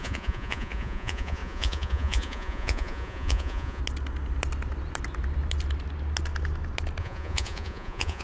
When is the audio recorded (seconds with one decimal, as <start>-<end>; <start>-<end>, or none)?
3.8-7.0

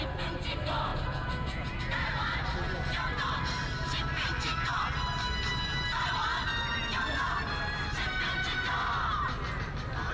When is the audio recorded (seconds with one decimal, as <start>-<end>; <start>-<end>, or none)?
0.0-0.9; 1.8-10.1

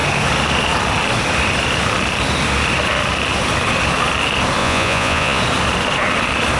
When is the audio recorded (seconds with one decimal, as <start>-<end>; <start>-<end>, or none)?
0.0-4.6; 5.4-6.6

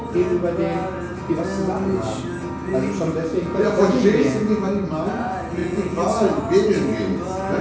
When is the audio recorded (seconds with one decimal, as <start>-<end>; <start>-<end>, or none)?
0.0-3.3; 4.7-5.6; 6.4-7.6

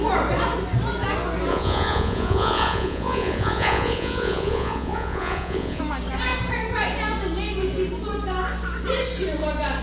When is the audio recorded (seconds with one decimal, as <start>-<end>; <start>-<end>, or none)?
0.0-1.5; 5.8-9.8

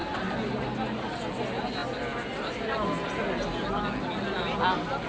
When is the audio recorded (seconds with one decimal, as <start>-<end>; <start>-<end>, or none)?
0.0-5.1

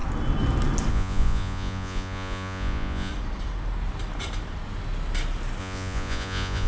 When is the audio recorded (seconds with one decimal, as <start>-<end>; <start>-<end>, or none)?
0.0-0.9; 3.1-5.6

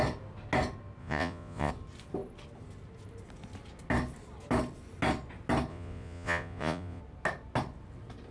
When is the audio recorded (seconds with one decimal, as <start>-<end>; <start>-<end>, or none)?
0.0-1.0; 1.7-5.7; 7.0-8.3